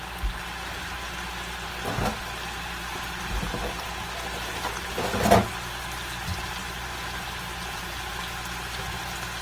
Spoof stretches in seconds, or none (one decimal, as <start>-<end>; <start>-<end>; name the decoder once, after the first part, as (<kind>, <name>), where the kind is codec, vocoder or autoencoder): 6.6-8.1 (vocoder, BigVGAN v2)